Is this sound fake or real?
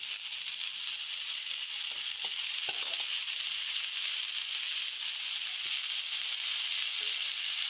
real